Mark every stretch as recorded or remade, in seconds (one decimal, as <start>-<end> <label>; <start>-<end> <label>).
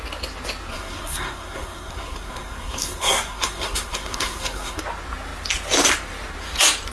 0.0-0.7 recorded; 0.7-4.8 remade; 4.8-6.9 recorded